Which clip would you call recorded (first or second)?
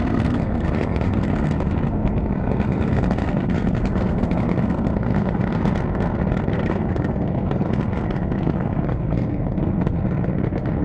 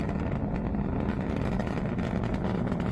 second